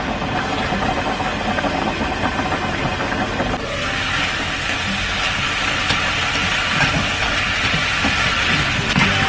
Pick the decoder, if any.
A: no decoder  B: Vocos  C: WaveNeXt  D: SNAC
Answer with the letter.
A